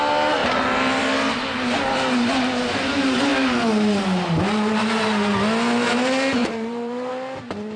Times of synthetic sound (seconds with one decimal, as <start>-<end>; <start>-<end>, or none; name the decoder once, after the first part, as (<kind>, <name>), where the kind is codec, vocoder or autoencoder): 0.4-1.0 (vocoder, BigVGAN v2); 6.4-7.1